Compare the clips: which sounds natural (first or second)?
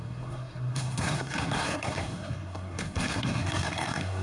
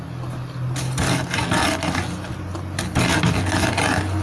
second